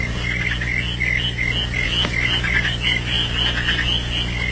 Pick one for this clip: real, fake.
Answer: real